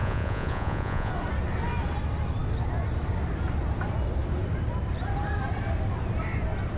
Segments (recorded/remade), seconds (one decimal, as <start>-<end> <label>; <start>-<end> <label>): 0.0-1.1 remade; 1.1-6.8 recorded